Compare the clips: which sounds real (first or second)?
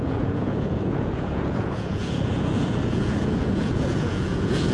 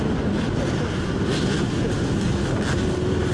second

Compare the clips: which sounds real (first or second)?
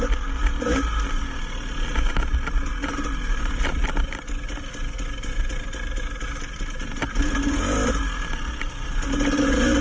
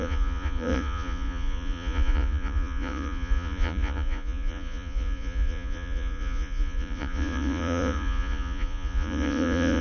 first